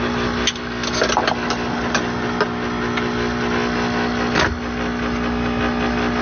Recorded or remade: recorded